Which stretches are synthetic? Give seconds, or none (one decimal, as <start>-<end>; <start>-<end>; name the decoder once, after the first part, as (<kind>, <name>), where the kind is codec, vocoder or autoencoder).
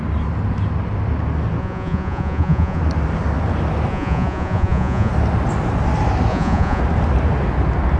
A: 1.6-2.8 (vocoder, Vocos); 3.9-5.1; 6.3-6.8